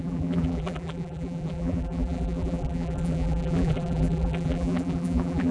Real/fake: fake